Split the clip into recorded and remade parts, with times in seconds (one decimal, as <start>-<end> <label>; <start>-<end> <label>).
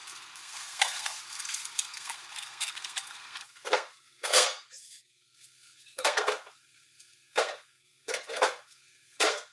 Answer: 0.0-9.5 remade